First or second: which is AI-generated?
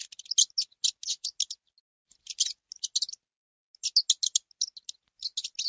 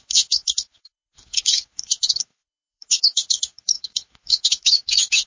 second